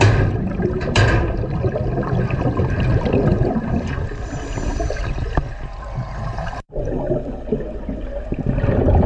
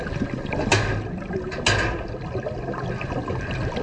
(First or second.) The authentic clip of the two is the second